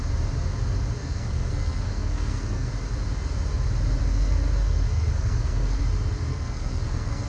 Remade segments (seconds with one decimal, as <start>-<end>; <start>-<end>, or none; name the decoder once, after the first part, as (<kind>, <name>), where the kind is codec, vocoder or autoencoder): 1.0-2.7 (codec, SNAC); 4.0-5.8; 6.3-7.3

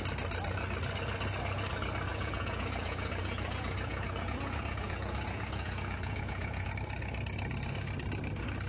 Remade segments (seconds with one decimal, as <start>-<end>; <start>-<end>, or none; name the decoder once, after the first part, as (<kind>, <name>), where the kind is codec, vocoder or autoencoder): 2.1-6.7 (vocoder, Vocos)

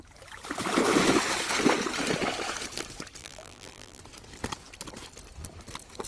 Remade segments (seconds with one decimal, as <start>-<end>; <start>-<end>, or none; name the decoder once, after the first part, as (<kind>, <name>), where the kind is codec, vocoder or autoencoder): 3.2-4.0 (vocoder, BigVGAN v2)

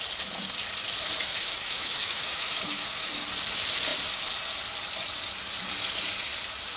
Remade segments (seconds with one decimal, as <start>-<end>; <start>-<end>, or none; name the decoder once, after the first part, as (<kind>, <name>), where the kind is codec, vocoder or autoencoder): 1.3-3.1 (autoencoder, DAC-VAE)

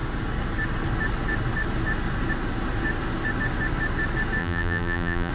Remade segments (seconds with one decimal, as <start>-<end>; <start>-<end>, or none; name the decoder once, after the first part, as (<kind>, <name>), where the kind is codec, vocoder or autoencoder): 4.4-5.3 (vocoder, BigVGAN v2)

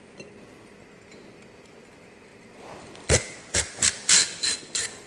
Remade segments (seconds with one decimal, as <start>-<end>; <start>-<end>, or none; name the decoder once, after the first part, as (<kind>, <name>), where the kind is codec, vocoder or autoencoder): none